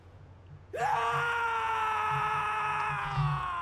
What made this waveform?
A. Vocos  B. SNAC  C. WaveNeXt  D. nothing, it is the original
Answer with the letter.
A